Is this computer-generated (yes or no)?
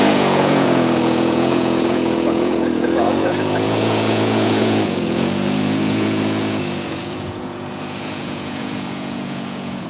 yes